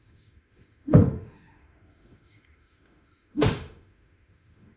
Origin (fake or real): fake